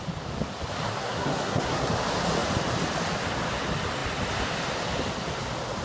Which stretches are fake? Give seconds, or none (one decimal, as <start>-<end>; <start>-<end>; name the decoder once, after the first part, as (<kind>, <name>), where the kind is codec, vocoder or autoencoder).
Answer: 0.9-1.9 (codec, SNAC)